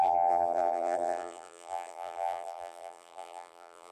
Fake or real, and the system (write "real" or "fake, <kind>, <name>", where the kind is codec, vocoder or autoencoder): fake, vocoder, BigVGAN v2